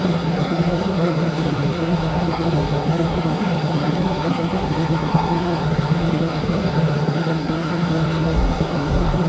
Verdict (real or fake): fake